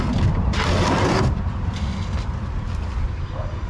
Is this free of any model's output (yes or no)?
no